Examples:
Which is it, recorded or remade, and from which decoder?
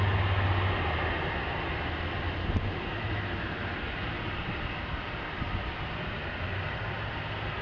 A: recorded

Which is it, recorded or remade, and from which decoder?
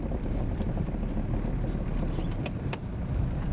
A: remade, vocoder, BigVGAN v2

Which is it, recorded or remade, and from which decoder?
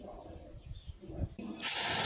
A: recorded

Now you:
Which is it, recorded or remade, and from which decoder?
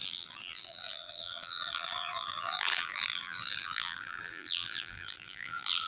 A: remade, vocoder, BigVGAN v2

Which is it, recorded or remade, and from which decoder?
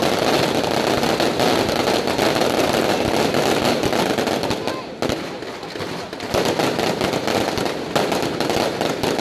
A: recorded